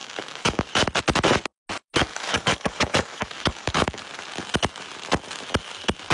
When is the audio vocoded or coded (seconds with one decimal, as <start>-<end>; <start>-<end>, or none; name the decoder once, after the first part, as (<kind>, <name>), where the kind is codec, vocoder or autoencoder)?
0.0-0.6 (codec, DAC); 2.1-4.0